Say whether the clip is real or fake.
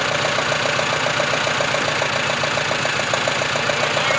real